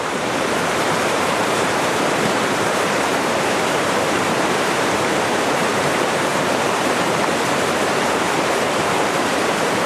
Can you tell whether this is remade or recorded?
remade